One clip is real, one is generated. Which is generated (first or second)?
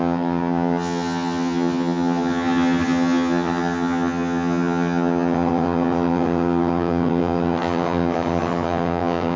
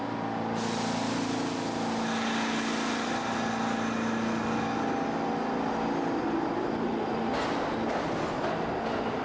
first